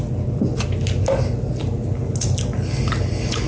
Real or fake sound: real